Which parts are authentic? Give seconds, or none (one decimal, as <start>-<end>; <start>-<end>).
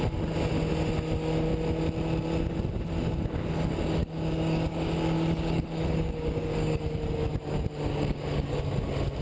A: 0.0-4.0; 6.8-7.9; 8.6-9.2